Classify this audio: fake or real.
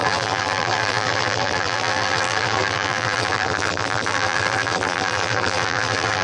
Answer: fake